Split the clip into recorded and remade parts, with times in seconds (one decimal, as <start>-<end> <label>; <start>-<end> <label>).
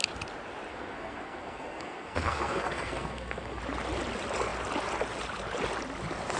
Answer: 0.0-0.7 recorded; 0.7-3.6 remade; 3.6-6.4 recorded